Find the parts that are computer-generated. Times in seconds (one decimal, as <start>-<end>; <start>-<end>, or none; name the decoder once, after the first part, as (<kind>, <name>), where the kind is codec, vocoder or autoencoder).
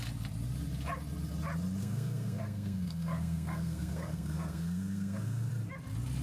1.8-5.5 (codec, SNAC)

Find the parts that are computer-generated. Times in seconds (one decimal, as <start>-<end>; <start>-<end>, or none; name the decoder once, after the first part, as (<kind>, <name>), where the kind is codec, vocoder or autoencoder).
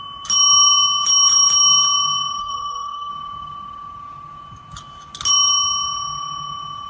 2.4-3.1 (codec, SNAC)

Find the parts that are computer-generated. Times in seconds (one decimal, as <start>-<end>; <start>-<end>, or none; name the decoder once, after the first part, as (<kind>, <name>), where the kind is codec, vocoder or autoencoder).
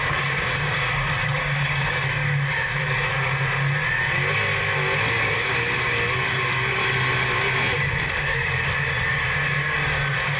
0.0-3.1 (codec, DAC); 5.3-6.8; 8.0-10.4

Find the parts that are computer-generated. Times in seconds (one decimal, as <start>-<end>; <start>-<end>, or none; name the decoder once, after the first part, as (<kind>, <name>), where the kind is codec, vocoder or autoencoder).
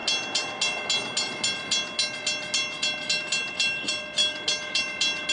none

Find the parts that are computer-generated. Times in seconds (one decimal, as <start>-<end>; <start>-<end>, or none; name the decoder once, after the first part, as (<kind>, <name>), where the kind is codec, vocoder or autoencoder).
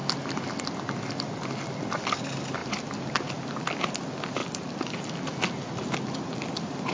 none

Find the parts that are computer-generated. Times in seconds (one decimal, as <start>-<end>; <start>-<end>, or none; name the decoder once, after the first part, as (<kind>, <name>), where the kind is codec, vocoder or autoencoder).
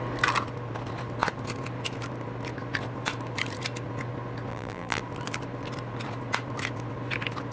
4.5-5.0 (vocoder, BigVGAN v2)